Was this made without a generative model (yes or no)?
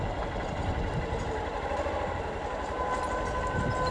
yes